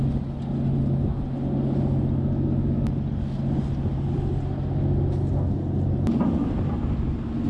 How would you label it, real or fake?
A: real